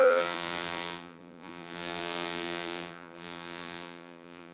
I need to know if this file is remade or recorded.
remade